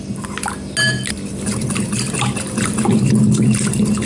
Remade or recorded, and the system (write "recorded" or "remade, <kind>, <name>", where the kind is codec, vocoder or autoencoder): recorded